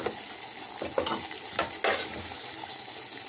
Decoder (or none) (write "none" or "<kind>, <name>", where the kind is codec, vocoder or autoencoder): none